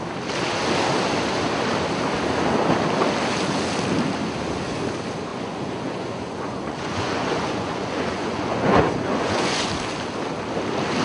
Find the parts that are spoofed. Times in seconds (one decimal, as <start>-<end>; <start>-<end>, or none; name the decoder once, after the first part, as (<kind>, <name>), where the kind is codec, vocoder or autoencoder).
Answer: 5.3-9.7 (vocoder, Vocos)